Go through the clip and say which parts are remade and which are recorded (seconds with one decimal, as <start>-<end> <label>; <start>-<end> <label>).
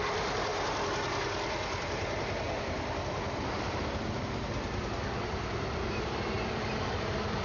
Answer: 0.0-0.5 remade; 0.5-2.6 recorded; 2.6-7.4 remade